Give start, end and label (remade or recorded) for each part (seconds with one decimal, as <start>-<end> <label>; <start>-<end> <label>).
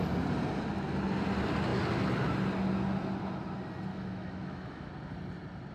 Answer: 0.0-3.9 recorded; 3.9-4.9 remade; 4.9-5.7 recorded